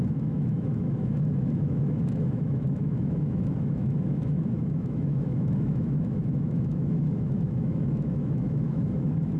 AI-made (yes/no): yes